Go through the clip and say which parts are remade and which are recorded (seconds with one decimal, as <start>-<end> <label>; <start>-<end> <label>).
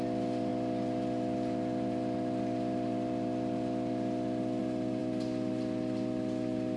0.0-6.8 recorded